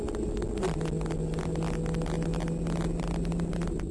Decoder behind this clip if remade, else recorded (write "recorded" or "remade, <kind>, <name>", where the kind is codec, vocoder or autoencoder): recorded